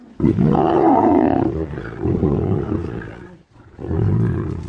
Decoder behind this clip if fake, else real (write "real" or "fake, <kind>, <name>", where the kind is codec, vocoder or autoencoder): fake, vocoder, Vocos